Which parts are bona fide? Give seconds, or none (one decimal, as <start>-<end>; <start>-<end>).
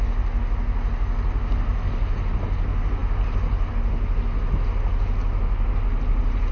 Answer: 0.0-6.5